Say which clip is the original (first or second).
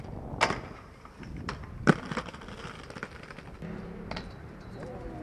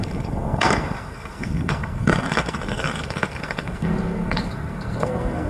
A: first